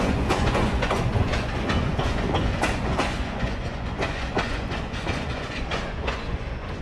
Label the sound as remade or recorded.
remade